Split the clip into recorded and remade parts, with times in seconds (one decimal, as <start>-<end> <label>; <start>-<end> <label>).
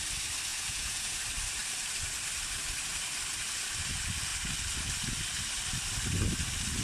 0.0-0.5 recorded; 0.5-1.2 remade; 1.2-6.8 recorded